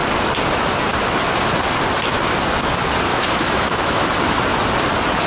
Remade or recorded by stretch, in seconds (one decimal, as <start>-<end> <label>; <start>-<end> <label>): 0.0-3.1 recorded; 3.1-4.0 remade; 4.0-5.3 recorded